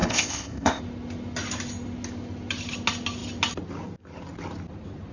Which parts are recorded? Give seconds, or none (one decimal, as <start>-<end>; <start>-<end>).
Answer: 0.8-5.1